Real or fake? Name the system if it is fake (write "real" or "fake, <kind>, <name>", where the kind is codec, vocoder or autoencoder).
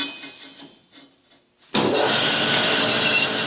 real